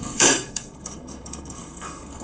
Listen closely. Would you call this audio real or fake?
fake